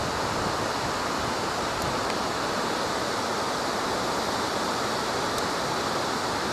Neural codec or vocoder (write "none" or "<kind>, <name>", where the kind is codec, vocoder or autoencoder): none